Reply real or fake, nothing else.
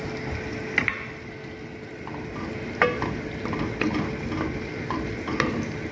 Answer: real